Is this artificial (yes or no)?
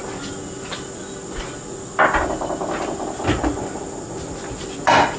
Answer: no